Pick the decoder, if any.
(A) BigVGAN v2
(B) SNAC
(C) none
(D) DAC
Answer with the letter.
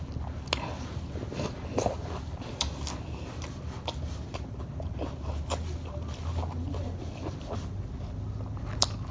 C